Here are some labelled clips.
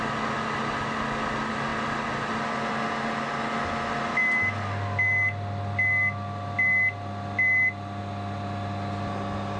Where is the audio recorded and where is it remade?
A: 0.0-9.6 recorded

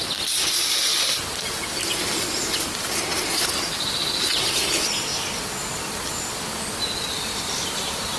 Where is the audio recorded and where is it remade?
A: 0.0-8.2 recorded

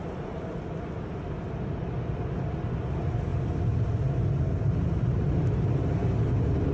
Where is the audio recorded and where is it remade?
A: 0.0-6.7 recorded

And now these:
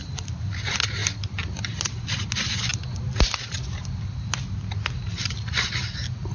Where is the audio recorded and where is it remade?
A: 0.0-6.3 recorded

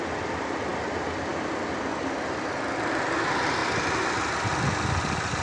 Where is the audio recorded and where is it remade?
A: 0.0-5.4 recorded

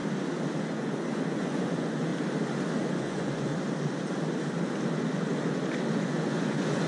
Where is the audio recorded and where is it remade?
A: 0.0-0.6 recorded; 0.6-2.1 remade; 2.1-2.8 recorded; 2.8-3.5 remade; 3.5-5.9 recorded; 5.9-6.9 remade

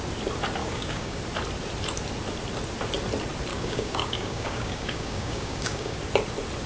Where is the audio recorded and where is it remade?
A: 0.0-0.6 recorded; 0.6-1.2 remade; 1.2-3.5 recorded; 3.5-6.0 remade; 6.0-6.7 recorded

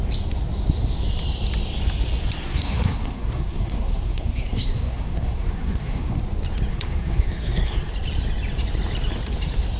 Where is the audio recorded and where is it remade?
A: 0.0-2.4 recorded; 2.4-6.2 remade; 6.2-6.7 recorded; 6.7-7.9 remade; 7.9-9.8 recorded